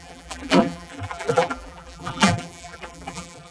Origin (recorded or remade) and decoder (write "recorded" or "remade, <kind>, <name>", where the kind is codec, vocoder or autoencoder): remade, vocoder, BigVGAN v2